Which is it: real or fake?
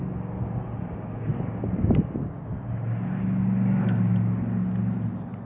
real